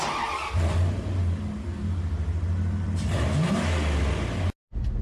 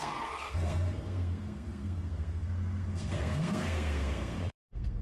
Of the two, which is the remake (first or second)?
second